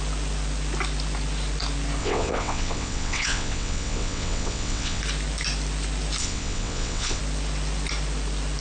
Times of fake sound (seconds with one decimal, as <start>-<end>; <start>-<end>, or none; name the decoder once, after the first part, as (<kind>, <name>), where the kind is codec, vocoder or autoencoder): 2.0-5.0 (vocoder, WaveNeXt); 6.2-7.2